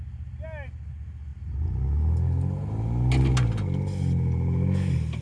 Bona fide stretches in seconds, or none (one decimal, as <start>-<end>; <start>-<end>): 0.0-5.2